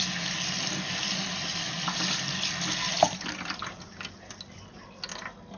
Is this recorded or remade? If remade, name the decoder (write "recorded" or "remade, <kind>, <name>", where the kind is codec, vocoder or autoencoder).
recorded